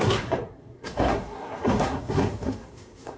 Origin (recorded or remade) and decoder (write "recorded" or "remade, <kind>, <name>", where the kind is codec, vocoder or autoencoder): remade, codec, SNAC